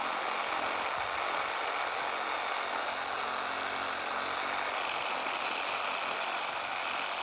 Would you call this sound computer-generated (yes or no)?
no